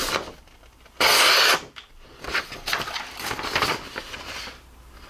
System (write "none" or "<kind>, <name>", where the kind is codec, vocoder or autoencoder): none